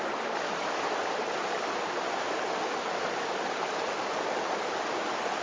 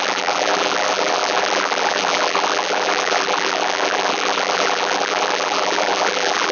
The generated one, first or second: second